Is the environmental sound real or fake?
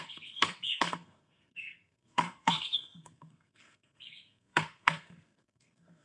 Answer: fake